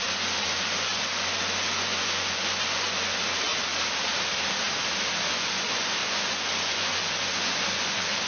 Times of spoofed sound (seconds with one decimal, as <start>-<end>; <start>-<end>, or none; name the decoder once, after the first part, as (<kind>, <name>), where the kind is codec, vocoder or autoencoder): 0.0-3.5 (vocoder, Vocos); 5.3-8.3